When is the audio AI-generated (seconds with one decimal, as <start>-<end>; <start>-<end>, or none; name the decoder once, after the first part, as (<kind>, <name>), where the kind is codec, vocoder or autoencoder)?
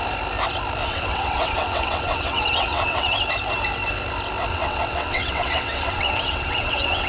0.8-3.1 (vocoder, WaveNeXt); 4.5-7.1